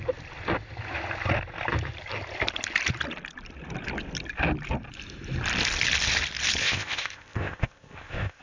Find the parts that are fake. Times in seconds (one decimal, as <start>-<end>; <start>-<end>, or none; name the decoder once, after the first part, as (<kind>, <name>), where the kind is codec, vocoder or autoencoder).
6.6-8.4 (codec, ZipCodec)